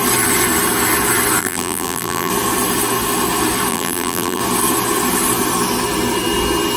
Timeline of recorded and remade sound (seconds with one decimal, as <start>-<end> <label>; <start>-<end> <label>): 0.0-1.4 recorded; 1.4-2.3 remade; 2.3-3.7 recorded; 3.7-4.4 remade; 4.4-6.8 recorded